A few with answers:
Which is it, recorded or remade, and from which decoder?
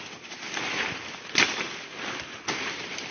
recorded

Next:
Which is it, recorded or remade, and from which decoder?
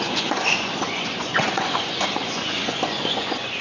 remade, vocoder, Vocos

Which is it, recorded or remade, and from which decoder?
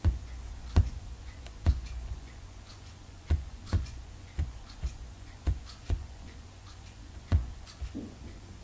remade, vocoder, Vocos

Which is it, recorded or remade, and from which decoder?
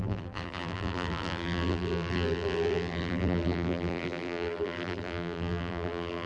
remade, vocoder, BigVGAN v2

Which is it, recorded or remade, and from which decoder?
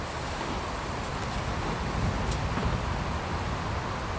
recorded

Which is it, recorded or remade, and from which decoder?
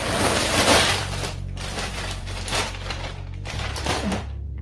remade, vocoder, BigVGAN v2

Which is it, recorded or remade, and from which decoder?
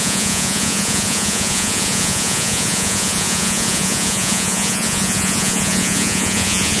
remade, vocoder, Vocos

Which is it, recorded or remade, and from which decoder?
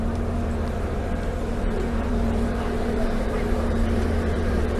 remade, vocoder, BigVGAN v2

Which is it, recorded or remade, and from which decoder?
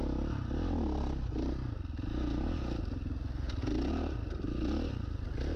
recorded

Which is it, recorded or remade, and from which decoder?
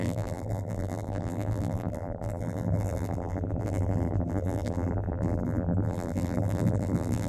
remade, vocoder, BigVGAN v2